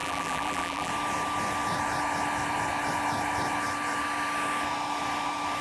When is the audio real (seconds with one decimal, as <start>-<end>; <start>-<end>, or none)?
0.9-5.6